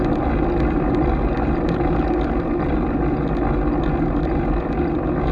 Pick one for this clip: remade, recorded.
recorded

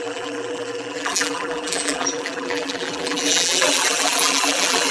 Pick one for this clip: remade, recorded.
remade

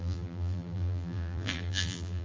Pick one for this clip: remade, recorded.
remade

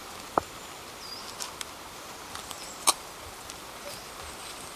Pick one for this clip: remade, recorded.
remade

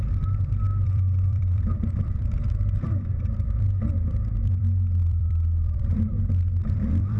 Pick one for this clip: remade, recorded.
remade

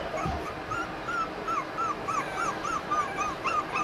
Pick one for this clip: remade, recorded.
recorded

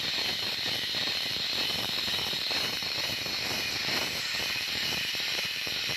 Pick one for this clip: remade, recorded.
remade